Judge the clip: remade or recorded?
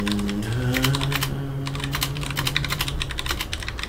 recorded